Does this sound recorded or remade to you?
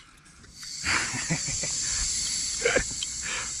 recorded